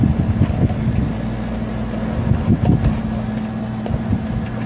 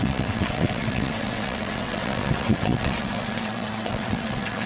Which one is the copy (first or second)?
second